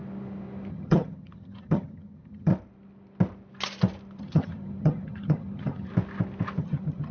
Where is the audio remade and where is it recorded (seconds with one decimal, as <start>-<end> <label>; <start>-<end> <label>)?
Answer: 0.0-0.7 recorded; 0.7-2.5 remade; 2.5-4.2 recorded; 4.2-5.9 remade; 5.9-6.6 recorded; 6.6-7.1 remade